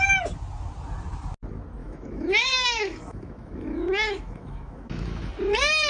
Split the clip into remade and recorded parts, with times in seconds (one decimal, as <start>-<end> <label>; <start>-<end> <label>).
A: 0.0-1.8 recorded; 1.8-5.3 remade; 5.3-5.9 recorded